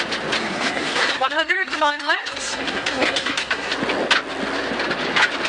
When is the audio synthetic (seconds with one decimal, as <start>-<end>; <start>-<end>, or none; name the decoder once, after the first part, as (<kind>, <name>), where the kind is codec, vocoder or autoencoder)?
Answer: 0.4-3.7 (codec, SNAC)